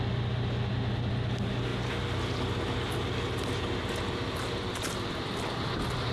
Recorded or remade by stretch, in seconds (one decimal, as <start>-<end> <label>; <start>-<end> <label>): 0.0-6.1 recorded